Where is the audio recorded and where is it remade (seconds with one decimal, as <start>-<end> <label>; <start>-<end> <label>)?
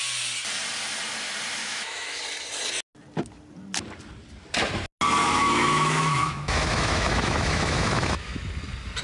0.0-1.6 recorded; 1.6-2.2 remade; 2.2-5.2 recorded; 5.2-8.4 remade; 8.4-9.0 recorded